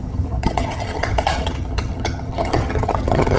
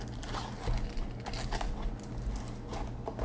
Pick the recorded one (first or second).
second